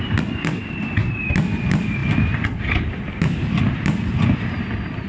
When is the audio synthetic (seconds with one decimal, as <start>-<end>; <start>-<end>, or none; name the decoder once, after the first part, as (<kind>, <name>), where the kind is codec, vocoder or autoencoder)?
none